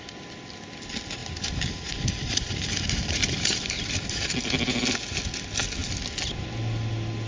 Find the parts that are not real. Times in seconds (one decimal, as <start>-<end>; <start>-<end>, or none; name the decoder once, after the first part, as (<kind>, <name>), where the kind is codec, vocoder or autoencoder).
1.2-4.3 (vocoder, BigVGAN v2)